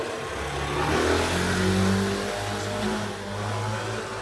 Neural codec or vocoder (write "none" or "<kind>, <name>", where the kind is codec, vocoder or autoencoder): none